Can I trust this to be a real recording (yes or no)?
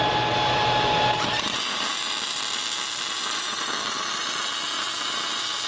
yes